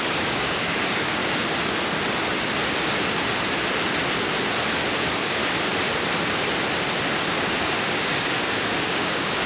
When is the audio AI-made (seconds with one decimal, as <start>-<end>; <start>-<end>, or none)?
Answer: 0.0-1.2; 5.0-5.4; 7.9-9.5